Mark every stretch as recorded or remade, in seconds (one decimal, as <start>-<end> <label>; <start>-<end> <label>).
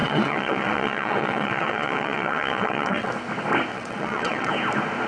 0.0-3.1 remade; 3.1-3.7 recorded; 3.7-4.5 remade; 4.5-5.1 recorded